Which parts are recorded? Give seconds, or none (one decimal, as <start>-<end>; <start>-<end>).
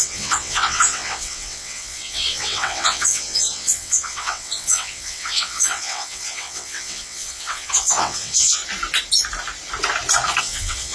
8.6-10.4